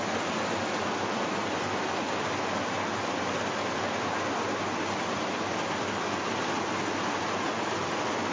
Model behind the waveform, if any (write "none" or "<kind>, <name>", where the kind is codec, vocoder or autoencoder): none